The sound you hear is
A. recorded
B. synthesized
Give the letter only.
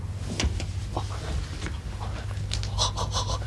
A